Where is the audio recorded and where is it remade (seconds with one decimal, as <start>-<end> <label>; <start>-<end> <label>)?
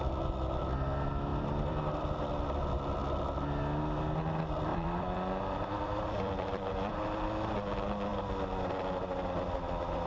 0.0-1.3 recorded; 1.3-2.2 remade; 2.2-4.7 recorded; 4.7-6.7 remade; 6.7-10.1 recorded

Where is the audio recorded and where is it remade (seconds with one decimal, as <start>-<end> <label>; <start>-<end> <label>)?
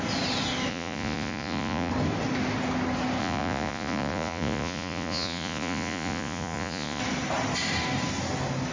0.0-0.7 recorded; 0.7-1.9 remade; 1.9-3.2 recorded; 3.2-7.0 remade; 7.0-8.7 recorded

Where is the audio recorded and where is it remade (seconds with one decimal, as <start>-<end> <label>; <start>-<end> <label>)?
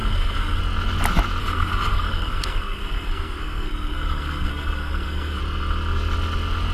0.0-0.6 remade; 0.6-1.4 recorded; 1.4-5.4 remade; 5.4-6.7 recorded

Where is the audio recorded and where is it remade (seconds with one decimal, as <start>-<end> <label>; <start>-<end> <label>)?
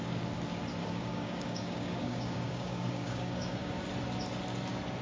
0.0-0.8 recorded; 0.8-3.8 remade; 3.8-5.0 recorded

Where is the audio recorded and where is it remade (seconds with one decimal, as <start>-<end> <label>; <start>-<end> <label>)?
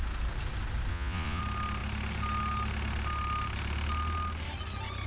0.0-0.9 recorded; 0.9-1.4 remade; 1.4-5.1 recorded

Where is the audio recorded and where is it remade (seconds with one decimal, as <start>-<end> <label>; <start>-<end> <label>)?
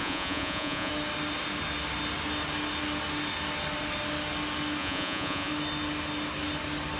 0.0-0.9 remade; 0.9-4.8 recorded; 4.8-5.5 remade; 5.5-7.0 recorded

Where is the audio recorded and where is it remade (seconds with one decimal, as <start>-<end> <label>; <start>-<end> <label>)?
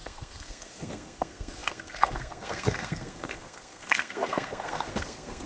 0.0-5.5 remade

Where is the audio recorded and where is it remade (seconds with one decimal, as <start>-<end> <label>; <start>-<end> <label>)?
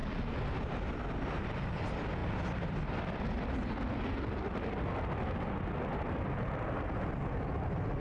0.0-2.2 recorded; 2.2-4.7 remade; 4.7-8.0 recorded